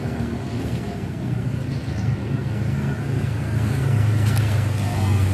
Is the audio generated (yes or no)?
yes